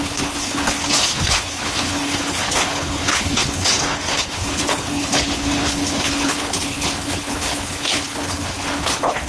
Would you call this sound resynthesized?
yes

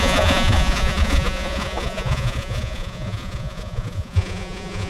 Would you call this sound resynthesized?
yes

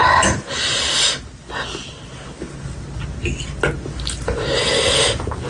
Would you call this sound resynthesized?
no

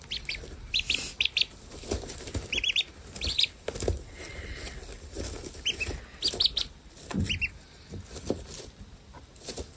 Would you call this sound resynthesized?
no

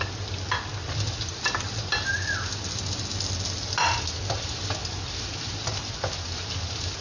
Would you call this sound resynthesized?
no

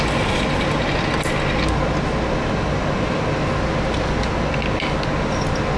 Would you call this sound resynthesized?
no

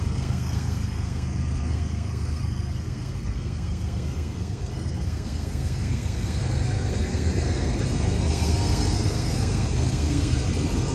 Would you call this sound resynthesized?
yes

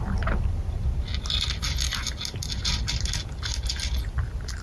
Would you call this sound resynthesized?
no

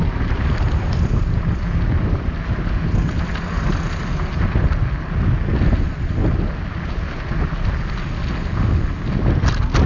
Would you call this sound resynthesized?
no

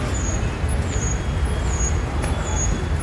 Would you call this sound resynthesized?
no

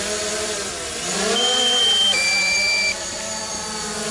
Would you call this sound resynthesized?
yes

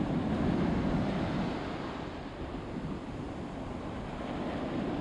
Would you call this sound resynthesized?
no